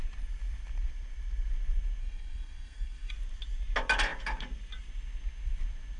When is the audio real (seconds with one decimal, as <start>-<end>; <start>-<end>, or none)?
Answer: 0.0-2.0; 3.1-6.0